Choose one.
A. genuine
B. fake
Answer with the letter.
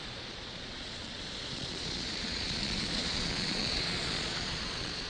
B